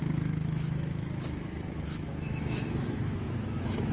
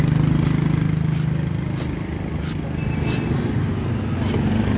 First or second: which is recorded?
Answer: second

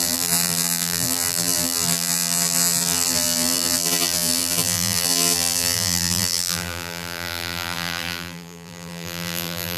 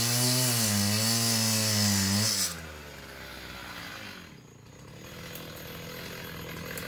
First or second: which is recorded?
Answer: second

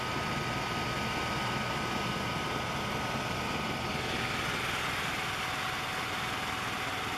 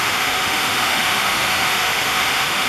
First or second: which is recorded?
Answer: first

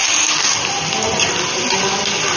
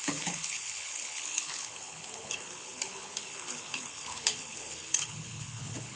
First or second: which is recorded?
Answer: first